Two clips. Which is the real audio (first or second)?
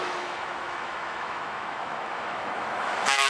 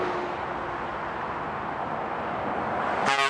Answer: second